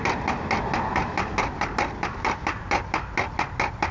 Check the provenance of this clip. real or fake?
real